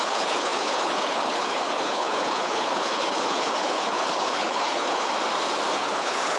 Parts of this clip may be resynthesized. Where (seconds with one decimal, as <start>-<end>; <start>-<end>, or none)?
0.0-5.1; 5.7-6.4

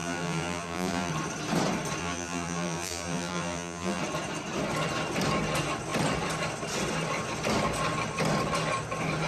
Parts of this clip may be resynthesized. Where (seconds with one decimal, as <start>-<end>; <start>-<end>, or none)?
0.0-1.1; 2.0-4.0

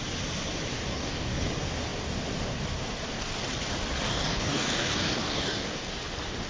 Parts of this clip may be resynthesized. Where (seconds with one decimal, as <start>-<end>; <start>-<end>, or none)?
0.7-1.3; 4.1-5.9

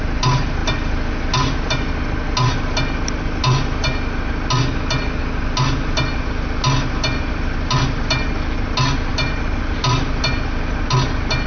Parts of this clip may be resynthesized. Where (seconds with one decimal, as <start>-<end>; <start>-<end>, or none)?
none

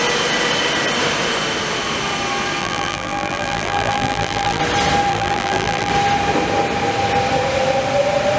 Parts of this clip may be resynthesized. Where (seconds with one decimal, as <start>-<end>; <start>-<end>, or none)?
2.6-4.6; 5.1-5.9

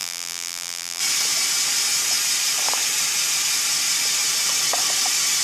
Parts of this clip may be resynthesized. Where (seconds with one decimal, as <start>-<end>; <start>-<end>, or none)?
0.0-1.0

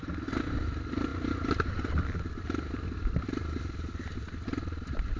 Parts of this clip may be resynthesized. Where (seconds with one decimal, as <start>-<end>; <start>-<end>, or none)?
none

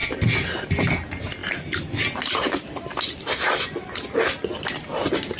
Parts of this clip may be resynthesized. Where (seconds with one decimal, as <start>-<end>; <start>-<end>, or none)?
none